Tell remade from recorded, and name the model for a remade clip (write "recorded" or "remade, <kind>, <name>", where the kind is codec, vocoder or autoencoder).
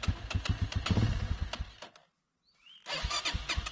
recorded